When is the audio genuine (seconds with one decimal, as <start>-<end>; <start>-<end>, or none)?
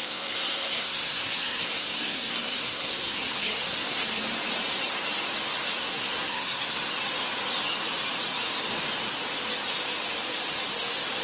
4.2-5.8; 6.9-11.2